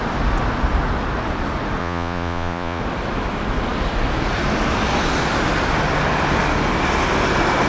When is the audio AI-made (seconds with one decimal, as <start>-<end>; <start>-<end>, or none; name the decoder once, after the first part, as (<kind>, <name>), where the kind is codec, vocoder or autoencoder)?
1.8-2.8 (vocoder, Vocos)